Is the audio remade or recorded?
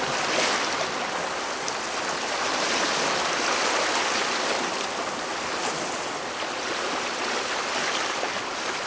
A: recorded